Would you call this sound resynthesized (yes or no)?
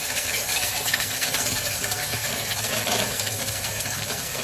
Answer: yes